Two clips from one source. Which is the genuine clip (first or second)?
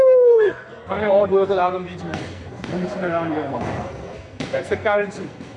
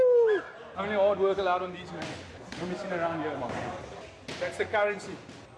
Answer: second